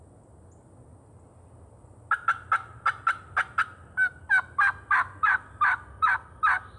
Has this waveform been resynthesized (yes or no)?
no